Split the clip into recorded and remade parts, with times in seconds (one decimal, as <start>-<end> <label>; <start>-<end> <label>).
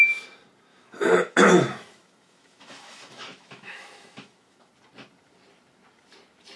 0.0-0.7 recorded; 0.7-4.7 remade; 4.7-6.6 recorded